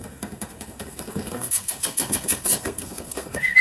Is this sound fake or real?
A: fake